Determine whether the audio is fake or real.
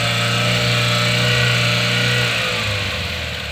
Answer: real